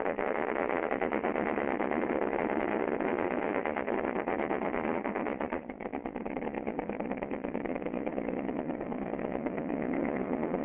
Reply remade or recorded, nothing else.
remade